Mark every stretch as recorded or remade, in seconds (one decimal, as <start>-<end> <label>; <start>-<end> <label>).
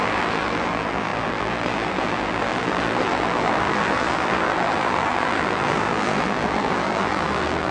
0.0-7.7 remade